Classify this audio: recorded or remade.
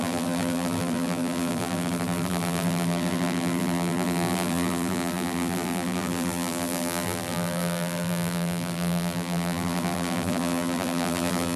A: remade